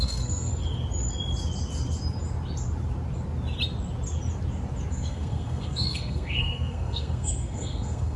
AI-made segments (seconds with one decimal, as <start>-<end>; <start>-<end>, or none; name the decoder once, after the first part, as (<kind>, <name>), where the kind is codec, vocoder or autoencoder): 0.0-0.5 (codec, SNAC); 4.9-8.2